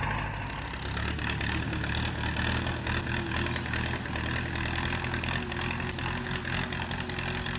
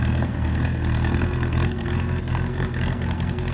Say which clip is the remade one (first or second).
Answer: second